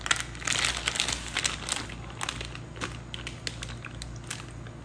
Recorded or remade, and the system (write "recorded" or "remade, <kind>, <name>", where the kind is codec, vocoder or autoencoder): recorded